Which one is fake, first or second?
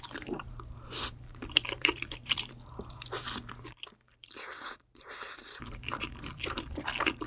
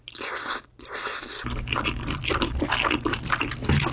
first